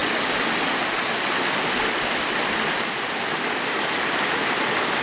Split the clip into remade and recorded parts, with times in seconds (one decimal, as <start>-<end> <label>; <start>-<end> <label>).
0.0-5.0 recorded